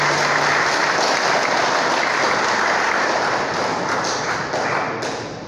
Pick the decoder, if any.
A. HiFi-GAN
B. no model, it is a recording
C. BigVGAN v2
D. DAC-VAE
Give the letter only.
B